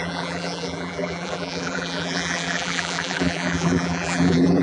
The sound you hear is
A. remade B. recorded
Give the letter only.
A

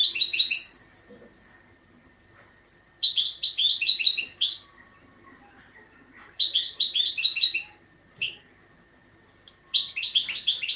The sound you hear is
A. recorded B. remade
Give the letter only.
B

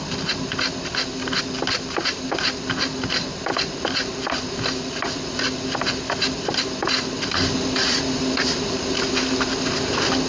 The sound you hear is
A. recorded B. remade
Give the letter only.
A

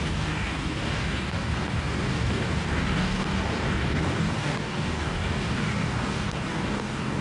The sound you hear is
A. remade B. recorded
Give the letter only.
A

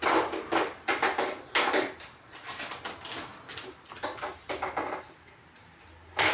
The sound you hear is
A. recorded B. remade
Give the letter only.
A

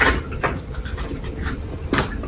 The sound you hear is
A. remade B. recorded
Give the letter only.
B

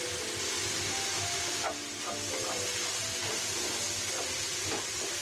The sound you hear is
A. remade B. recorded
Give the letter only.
B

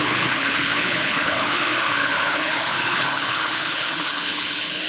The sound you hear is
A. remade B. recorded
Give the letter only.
A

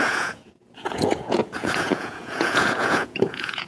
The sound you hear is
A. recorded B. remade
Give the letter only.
B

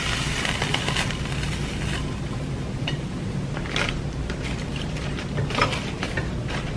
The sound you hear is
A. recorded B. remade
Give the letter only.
B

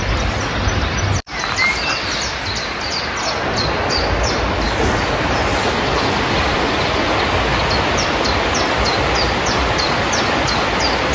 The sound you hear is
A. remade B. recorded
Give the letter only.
B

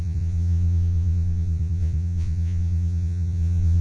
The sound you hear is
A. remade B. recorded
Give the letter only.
A